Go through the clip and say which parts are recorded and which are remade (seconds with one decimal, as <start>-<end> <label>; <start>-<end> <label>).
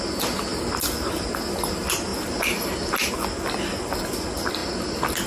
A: 0.0-2.1 recorded; 2.1-3.1 remade; 3.1-5.3 recorded